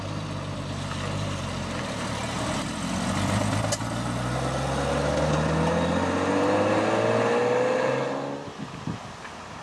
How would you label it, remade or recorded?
recorded